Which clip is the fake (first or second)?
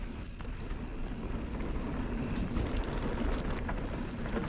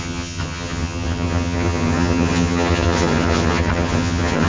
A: second